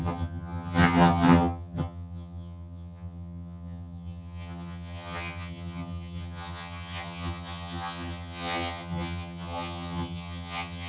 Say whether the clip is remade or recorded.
remade